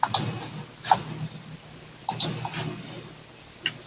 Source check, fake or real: real